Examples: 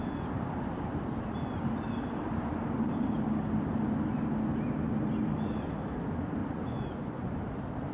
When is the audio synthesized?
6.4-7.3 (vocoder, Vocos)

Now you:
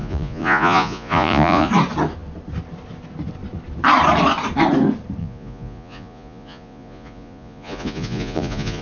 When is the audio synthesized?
0.0-1.7 (vocoder, Vocos); 5.2-8.8

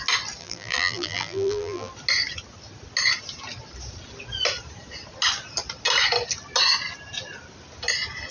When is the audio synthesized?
0.4-1.9 (vocoder, BigVGAN v2)

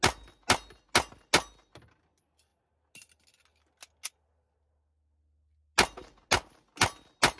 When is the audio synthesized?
none

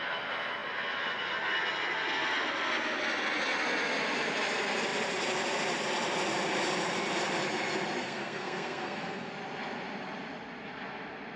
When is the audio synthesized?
8.0-9.3 (codec, SNAC)